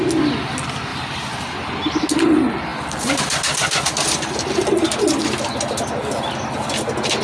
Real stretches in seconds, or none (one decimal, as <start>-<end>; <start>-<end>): 0.0-0.9; 1.5-7.2